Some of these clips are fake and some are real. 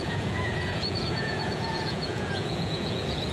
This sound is fake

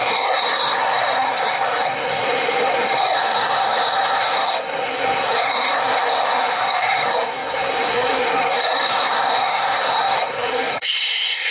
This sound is fake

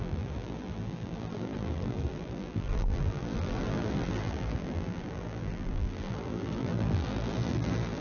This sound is fake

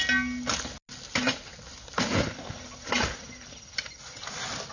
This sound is real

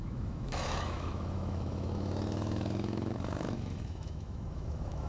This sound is fake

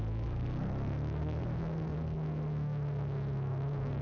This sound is fake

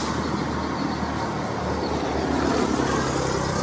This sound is real